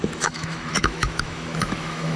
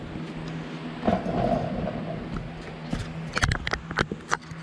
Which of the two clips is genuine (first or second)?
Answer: second